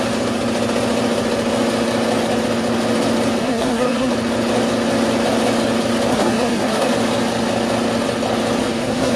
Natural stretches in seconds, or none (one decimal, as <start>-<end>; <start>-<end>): 0.0-3.4; 4.1-6.1; 6.9-8.6